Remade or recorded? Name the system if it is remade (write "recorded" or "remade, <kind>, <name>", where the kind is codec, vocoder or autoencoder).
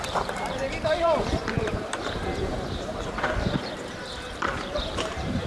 remade, vocoder, BigVGAN v2